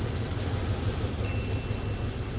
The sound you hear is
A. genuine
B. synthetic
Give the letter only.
A